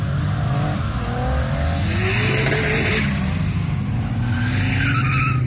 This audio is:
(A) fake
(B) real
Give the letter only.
B